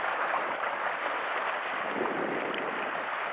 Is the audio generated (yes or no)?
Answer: yes